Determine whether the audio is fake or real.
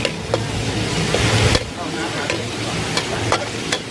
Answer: real